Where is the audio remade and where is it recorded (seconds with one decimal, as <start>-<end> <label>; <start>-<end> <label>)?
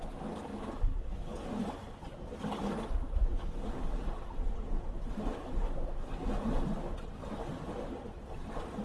0.0-0.9 recorded; 0.9-1.5 remade; 1.5-8.8 recorded